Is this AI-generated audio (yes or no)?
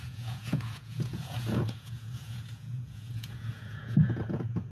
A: yes